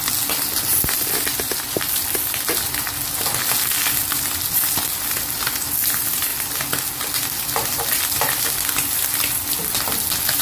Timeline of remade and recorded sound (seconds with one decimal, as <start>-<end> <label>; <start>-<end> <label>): 0.0-10.4 recorded